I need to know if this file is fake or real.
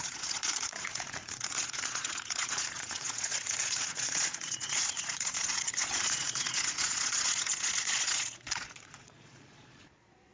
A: fake